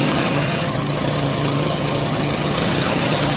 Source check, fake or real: fake